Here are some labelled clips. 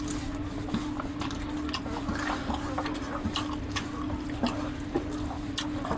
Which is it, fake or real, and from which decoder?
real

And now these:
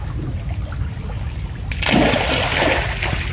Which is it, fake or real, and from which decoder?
real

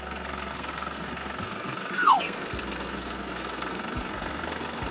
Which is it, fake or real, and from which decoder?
fake, codec, SNAC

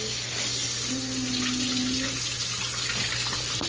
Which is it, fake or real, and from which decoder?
real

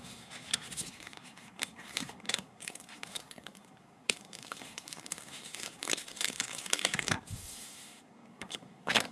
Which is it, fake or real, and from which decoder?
fake, codec, SNAC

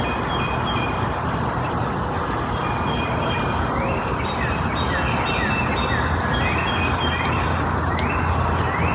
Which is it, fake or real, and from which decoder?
real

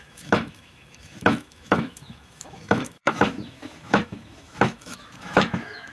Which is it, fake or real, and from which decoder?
fake, autoencoder, DAC-VAE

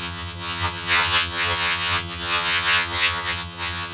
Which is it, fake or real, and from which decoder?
fake, vocoder, HiFi-GAN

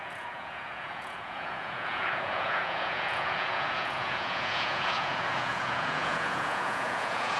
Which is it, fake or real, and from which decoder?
fake, vocoder, Vocos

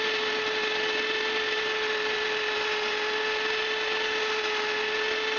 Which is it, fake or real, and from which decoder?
real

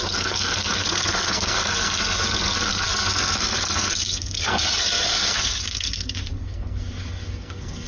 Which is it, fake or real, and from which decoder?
fake, codec, SNAC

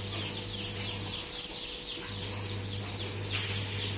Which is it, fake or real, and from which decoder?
real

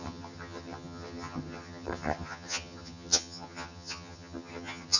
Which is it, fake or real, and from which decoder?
fake, vocoder, HiFi-GAN